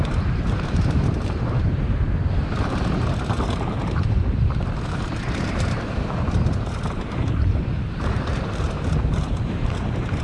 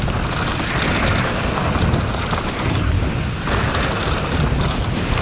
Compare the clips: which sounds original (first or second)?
second